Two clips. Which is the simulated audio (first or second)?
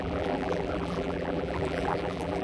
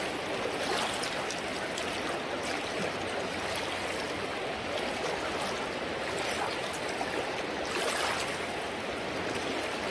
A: first